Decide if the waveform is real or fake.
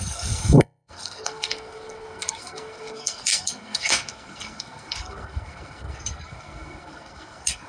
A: fake